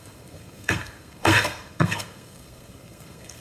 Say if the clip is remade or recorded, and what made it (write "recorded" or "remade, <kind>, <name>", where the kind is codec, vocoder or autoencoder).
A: remade, codec, SNAC